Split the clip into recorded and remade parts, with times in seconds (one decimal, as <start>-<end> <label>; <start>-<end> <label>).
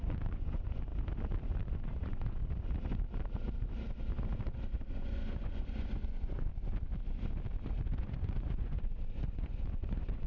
0.0-0.9 remade; 0.9-1.6 recorded; 1.6-2.4 remade; 2.4-4.9 recorded; 4.9-6.5 remade; 6.5-8.0 recorded; 8.0-10.3 remade